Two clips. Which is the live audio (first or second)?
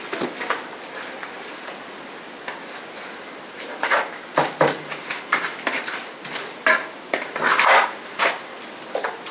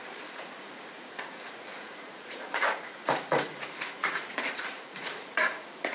first